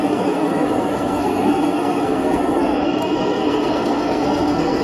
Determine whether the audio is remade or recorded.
remade